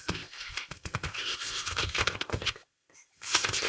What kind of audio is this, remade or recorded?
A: remade